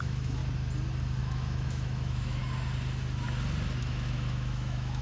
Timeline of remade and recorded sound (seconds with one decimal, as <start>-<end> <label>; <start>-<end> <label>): 0.0-0.4 remade; 0.4-1.2 recorded; 1.2-2.4 remade; 2.4-3.8 recorded; 3.8-5.0 remade